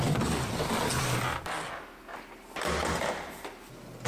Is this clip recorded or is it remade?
recorded